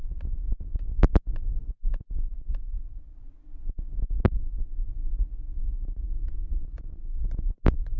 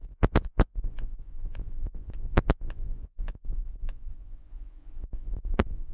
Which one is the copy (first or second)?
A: second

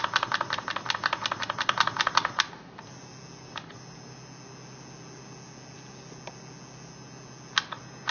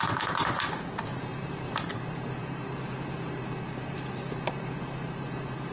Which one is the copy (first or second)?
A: second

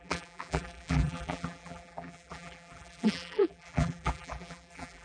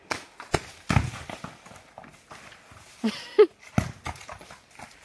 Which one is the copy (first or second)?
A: first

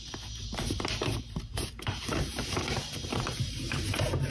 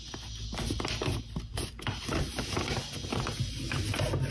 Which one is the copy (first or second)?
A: first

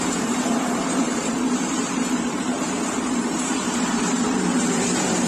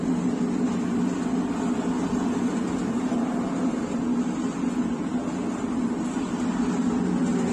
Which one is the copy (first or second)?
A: first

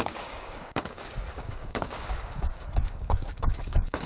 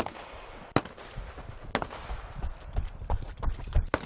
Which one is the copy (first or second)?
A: first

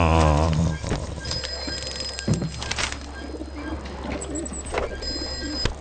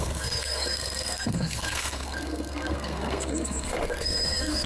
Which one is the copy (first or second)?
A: second